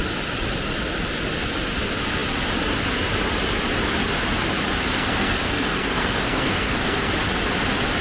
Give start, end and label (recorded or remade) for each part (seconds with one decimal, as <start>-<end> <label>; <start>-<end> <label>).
0.0-4.9 recorded; 4.9-7.1 remade; 7.1-8.0 recorded

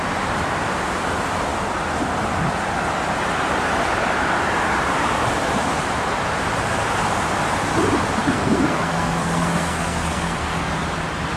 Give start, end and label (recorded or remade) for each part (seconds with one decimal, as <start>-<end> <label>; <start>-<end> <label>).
0.0-8.2 recorded; 8.2-10.7 remade; 10.7-11.4 recorded

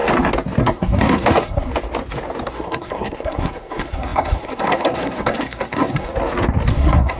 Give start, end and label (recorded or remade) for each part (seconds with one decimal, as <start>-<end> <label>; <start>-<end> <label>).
0.0-0.6 recorded; 0.6-1.7 remade; 1.7-2.5 recorded; 2.5-6.1 remade; 6.1-6.7 recorded; 6.7-7.2 remade

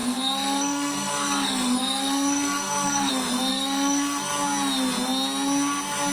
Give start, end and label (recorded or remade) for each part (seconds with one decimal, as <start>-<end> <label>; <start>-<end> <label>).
0.0-3.1 remade; 3.1-3.5 recorded; 3.5-4.3 remade; 4.3-6.1 recorded

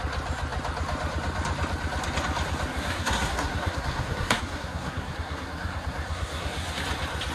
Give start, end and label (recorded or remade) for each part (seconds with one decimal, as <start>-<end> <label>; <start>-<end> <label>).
0.0-2.7 recorded; 2.7-6.8 remade; 6.8-7.3 recorded